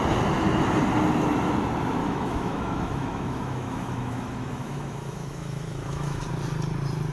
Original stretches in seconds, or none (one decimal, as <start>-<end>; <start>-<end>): 0.0-2.0; 6.2-7.1